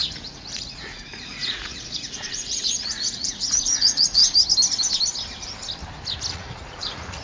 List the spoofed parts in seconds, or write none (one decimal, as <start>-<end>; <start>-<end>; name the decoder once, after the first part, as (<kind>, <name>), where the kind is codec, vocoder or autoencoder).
0.0-4.2 (vocoder, Vocos); 6.3-7.2